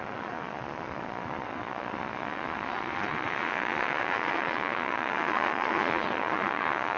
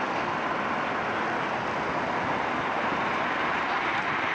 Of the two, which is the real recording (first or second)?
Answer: second